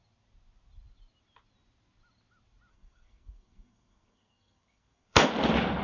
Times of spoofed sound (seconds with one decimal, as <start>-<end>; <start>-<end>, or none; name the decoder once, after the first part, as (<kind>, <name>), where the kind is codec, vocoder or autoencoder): 2.7-5.3 (codec, SNAC)